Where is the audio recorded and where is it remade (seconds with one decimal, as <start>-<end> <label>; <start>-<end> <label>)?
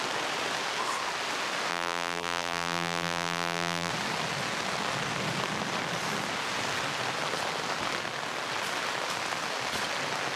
0.0-1.7 recorded; 1.7-3.9 remade; 3.9-10.4 recorded